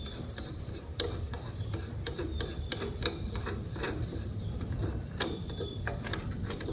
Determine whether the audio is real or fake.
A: fake